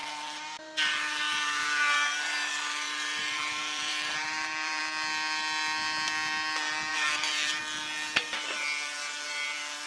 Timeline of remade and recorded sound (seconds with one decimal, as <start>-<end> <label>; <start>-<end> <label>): 0.0-4.8 remade; 4.8-6.9 recorded; 6.9-7.6 remade; 7.6-8.2 recorded; 8.2-9.9 remade